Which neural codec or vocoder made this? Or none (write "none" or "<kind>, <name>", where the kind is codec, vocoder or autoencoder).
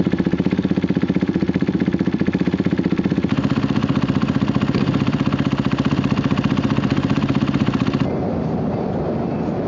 vocoder, BigVGAN v2